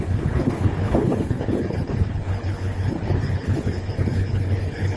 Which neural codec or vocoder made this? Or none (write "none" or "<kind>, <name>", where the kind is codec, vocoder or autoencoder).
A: codec, HILCodec